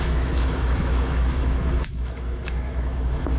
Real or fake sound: fake